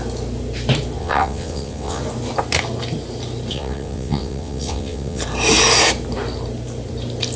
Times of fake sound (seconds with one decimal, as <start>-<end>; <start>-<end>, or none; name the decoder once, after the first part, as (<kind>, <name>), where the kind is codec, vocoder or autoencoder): 1.0-2.0 (vocoder, WaveNeXt); 3.5-5.2